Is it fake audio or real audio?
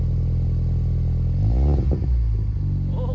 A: real